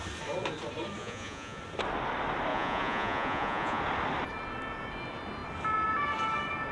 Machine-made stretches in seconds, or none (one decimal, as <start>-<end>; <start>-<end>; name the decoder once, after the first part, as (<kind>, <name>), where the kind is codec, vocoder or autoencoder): 1.0-1.6 (vocoder, Vocos); 2.5-3.8